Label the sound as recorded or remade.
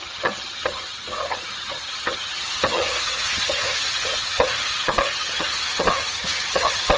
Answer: remade